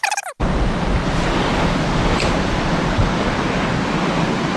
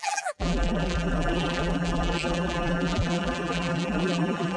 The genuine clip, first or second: first